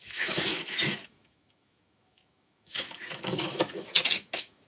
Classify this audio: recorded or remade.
remade